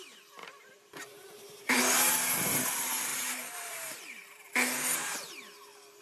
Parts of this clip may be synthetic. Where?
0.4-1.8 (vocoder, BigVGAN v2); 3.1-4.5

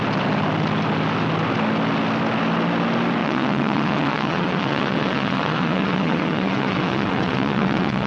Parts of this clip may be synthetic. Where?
3.2-8.1 (vocoder, WaveNeXt)

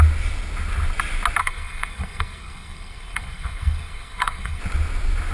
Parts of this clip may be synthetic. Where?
1.4-4.6 (codec, SNAC)

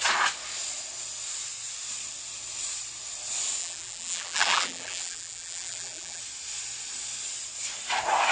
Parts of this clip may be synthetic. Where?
3.6-6.2 (vocoder, BigVGAN v2)